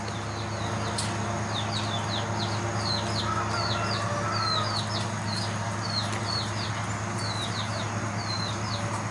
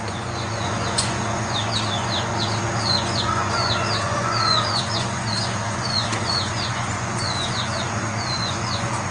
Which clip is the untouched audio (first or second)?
first